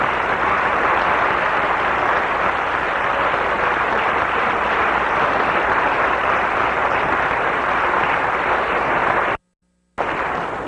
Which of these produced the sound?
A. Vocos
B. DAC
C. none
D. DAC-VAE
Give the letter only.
C